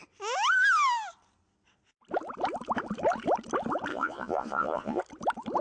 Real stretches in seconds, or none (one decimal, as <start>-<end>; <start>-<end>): 0.0-3.9; 5.0-5.6

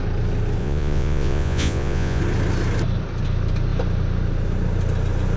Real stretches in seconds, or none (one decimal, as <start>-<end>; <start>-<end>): 0.0-0.6; 2.2-5.4